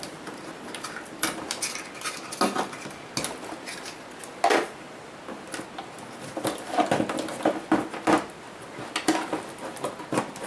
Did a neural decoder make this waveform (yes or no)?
no